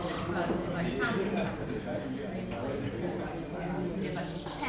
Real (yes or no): yes